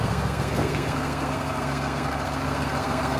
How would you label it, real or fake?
fake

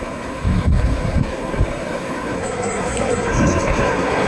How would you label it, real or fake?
fake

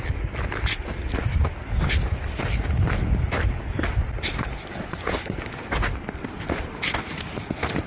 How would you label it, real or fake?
real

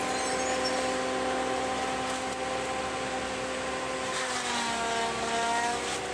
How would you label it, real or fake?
real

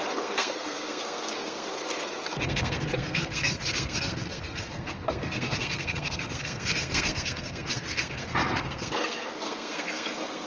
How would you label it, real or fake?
fake